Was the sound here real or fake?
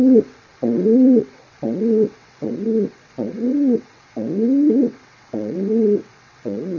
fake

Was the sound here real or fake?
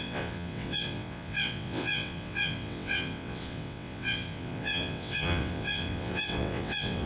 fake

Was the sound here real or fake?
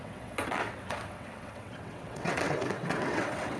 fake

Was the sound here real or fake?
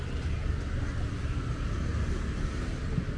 real